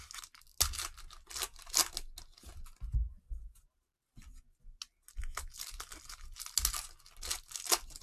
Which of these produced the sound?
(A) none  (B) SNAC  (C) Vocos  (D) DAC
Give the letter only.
A